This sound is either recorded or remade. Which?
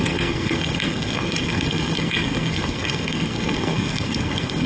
remade